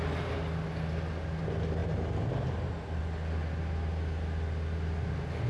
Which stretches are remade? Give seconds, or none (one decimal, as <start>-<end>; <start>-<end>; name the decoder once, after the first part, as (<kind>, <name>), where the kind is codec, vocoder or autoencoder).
none